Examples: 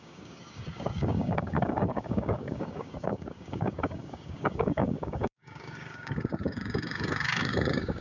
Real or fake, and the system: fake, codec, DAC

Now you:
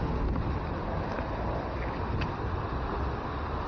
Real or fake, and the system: real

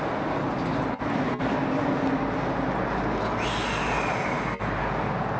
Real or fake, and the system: real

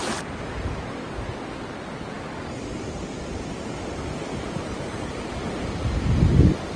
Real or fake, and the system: real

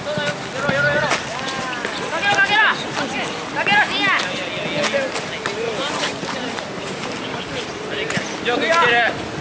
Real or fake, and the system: real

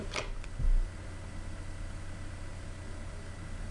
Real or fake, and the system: real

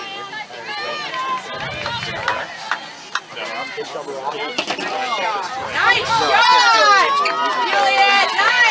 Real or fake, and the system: real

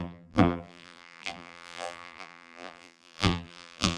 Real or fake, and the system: fake, vocoder, BigVGAN v2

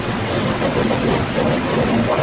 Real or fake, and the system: fake, vocoder, WaveNeXt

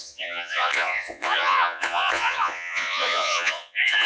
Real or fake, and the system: fake, vocoder, Vocos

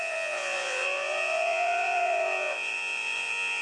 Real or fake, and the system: fake, vocoder, Vocos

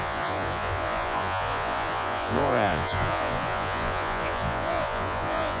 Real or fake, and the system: fake, vocoder, Vocos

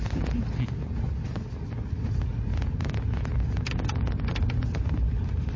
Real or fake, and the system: real